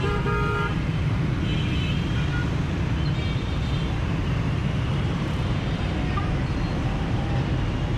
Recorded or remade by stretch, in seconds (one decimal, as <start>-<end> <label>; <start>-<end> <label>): 0.0-1.3 remade; 1.3-1.9 recorded; 1.9-8.0 remade